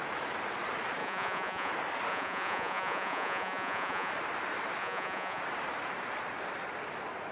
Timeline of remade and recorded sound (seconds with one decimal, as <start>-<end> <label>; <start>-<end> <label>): 0.0-1.0 recorded; 1.0-1.7 remade; 1.7-2.1 recorded; 2.1-4.1 remade; 4.1-4.8 recorded; 4.8-5.4 remade; 5.4-7.3 recorded

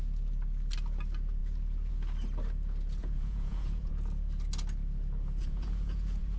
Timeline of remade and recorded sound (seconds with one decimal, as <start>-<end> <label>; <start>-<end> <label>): 0.0-3.0 recorded; 3.0-3.9 remade; 3.9-5.4 recorded; 5.4-6.4 remade

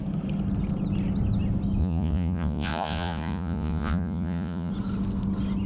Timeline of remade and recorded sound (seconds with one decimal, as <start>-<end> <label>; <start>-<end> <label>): 0.0-1.8 recorded; 1.8-4.7 remade; 4.7-5.7 recorded

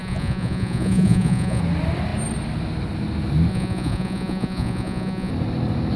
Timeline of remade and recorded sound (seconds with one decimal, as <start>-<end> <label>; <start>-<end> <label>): 0.0-1.6 remade; 1.6-3.5 recorded; 3.5-5.3 remade; 5.3-6.0 recorded

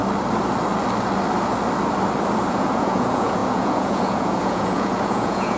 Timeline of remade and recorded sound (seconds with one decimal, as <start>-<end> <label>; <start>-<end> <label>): 0.0-2.5 recorded; 2.5-5.6 remade

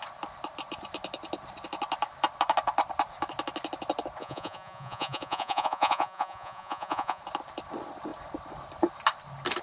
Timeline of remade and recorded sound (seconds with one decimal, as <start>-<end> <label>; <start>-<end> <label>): 0.0-4.2 recorded; 4.2-7.2 remade; 7.2-9.6 recorded